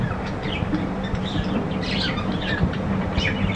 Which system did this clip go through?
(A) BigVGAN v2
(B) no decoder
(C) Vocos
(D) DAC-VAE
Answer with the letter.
A